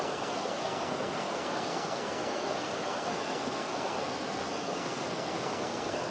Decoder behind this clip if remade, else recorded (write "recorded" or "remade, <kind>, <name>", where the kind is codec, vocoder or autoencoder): remade, codec, SNAC